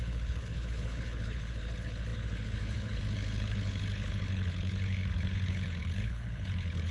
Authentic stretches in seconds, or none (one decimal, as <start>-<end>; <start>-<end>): none